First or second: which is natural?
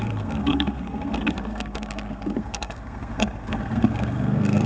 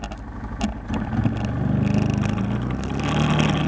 second